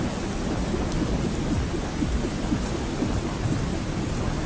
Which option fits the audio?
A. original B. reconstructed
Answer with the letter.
A